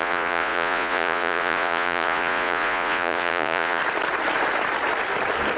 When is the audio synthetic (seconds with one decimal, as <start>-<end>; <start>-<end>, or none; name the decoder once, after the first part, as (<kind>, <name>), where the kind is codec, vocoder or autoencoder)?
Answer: 0.0-3.8 (vocoder, Vocos)